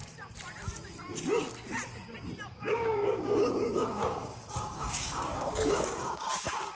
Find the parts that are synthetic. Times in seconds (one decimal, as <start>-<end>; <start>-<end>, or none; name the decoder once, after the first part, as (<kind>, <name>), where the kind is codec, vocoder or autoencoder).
2.5-6.7 (codec, DAC)